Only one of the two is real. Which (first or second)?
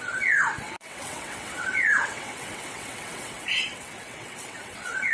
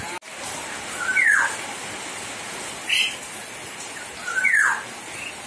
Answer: second